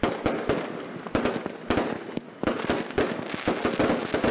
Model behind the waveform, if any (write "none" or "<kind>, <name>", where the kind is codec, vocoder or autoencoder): none